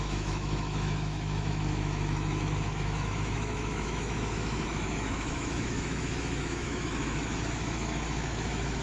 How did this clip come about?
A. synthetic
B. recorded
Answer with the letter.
A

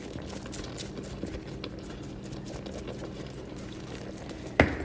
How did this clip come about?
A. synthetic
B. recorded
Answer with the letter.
B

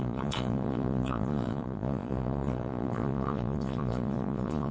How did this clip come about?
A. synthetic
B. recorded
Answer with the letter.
A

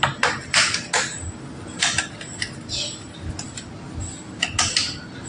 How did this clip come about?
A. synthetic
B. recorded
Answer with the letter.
B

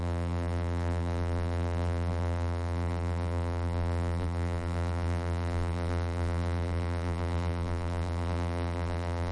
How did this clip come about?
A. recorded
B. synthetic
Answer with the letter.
B